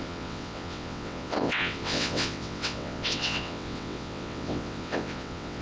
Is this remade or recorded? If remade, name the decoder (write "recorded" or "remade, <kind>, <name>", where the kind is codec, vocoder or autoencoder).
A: remade, vocoder, WaveNeXt